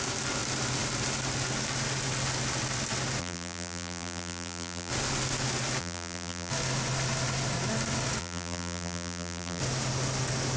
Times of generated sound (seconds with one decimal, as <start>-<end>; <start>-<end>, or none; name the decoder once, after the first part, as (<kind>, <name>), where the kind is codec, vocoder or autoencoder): 3.2-4.9 (vocoder, BigVGAN v2); 5.8-6.5; 8.2-9.6